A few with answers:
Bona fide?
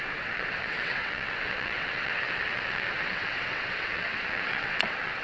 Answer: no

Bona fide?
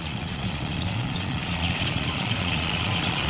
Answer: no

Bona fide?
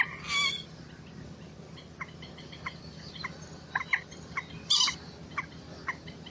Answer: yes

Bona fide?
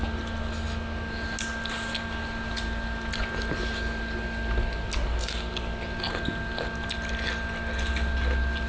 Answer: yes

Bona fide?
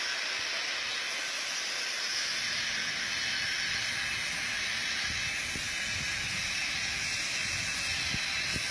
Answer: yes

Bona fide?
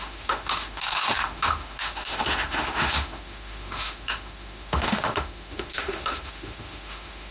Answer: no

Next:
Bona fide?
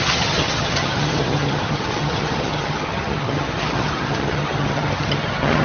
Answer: no